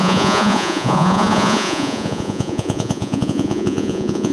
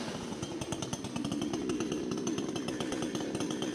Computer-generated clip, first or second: first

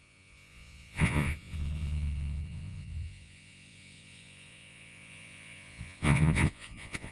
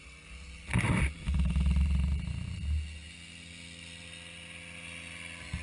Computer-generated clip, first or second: first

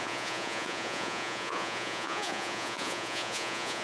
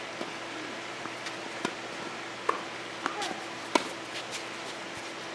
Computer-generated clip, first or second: first